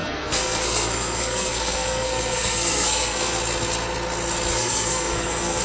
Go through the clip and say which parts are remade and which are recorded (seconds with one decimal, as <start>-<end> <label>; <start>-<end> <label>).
0.0-3.4 remade; 3.4-4.5 recorded; 4.5-5.6 remade